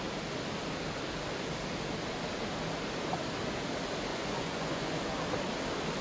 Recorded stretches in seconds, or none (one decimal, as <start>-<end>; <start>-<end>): 0.0-4.1; 5.0-6.0